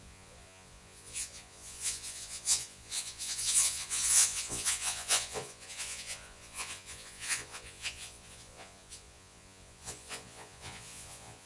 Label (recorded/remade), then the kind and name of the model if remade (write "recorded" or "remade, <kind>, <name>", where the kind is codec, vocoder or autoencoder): remade, vocoder, Vocos